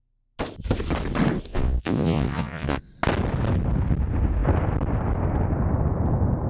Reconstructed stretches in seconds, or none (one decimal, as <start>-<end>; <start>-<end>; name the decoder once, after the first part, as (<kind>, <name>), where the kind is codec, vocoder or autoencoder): 1.5-2.9 (vocoder, Vocos)